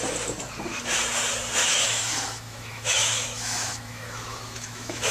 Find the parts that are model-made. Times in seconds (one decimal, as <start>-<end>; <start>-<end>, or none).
1.6-5.1